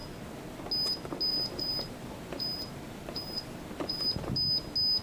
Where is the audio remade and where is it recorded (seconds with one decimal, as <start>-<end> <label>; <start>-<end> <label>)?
0.0-1.3 recorded; 1.3-4.3 remade; 4.3-5.0 recorded